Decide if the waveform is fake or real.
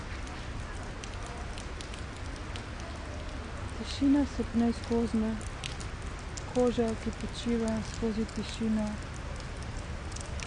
real